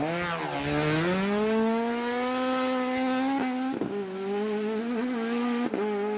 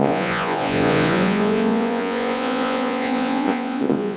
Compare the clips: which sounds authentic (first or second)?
first